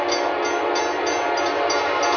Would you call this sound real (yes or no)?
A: yes